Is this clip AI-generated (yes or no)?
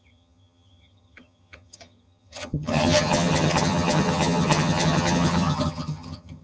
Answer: yes